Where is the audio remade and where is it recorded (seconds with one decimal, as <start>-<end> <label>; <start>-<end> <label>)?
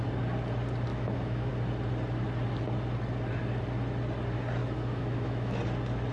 0.0-0.9 recorded; 0.9-1.5 remade; 1.5-4.6 recorded; 4.6-5.6 remade; 5.6-6.1 recorded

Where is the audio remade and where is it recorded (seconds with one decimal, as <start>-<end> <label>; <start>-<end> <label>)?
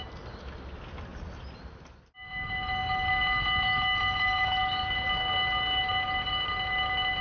0.0-7.2 recorded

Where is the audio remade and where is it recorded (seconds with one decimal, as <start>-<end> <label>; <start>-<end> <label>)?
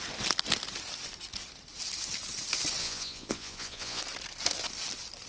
0.0-2.8 recorded; 2.8-4.0 remade; 4.0-5.3 recorded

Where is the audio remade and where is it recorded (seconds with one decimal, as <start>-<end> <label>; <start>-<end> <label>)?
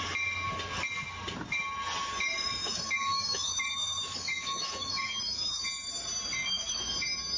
0.0-2.6 recorded; 2.6-5.6 remade; 5.6-6.4 recorded; 6.4-6.9 remade; 6.9-7.4 recorded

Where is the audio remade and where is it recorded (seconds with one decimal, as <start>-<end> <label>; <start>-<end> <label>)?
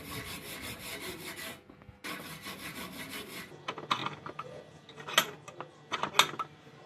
0.0-6.9 recorded